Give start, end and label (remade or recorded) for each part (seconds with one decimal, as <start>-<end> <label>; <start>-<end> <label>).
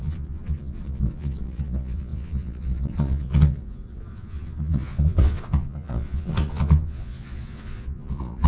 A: 0.0-8.5 remade